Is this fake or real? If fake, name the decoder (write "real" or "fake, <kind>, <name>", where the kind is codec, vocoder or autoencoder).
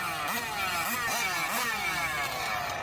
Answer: real